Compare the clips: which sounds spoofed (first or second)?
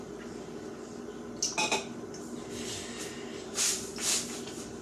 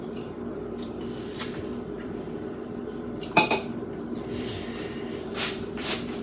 second